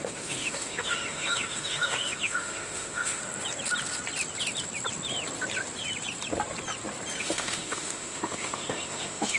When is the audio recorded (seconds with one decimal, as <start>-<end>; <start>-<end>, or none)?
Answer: 3.2-7.2